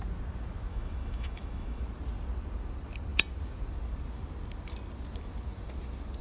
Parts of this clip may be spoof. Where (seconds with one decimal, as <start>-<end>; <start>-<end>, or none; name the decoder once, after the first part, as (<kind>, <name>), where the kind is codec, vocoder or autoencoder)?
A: 0.7-1.8 (autoencoder, DAC-VAE)